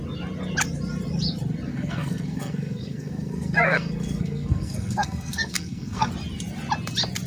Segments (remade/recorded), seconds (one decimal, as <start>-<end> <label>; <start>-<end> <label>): 0.0-1.7 recorded; 1.7-6.1 remade; 6.1-7.3 recorded